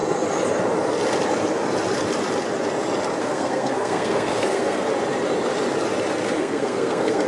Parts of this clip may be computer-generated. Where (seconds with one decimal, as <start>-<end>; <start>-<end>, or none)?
3.2-4.9; 6.4-7.3